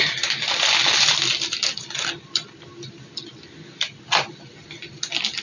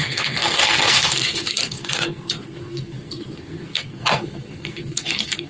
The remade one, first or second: second